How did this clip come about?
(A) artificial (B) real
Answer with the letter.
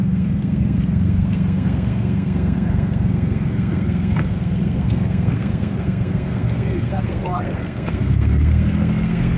A